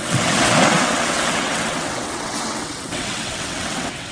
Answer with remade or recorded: remade